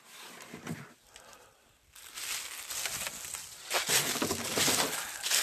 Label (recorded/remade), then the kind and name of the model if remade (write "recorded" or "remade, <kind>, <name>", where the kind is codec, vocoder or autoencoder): recorded